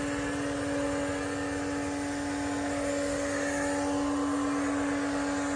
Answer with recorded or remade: recorded